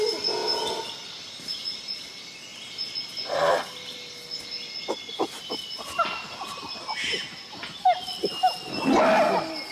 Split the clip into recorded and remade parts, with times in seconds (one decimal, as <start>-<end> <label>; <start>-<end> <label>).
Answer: 0.0-9.7 recorded